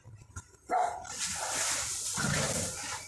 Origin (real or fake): fake